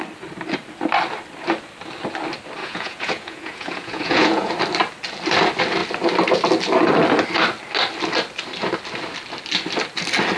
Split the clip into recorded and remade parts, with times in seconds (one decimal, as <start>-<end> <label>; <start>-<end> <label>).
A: 0.0-2.6 recorded; 2.6-4.5 remade; 4.5-10.4 recorded